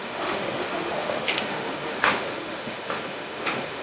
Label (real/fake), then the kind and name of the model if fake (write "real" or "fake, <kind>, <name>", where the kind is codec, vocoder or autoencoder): fake, autoencoder, DAC-VAE